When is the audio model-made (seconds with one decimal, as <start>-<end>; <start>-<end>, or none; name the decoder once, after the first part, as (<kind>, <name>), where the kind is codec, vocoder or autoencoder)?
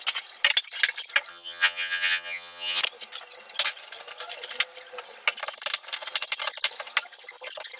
1.3-2.8 (vocoder, HiFi-GAN)